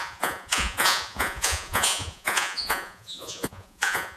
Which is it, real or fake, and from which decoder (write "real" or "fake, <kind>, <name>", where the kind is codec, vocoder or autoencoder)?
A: fake, vocoder, Vocos